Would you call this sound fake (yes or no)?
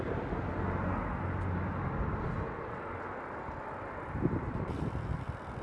no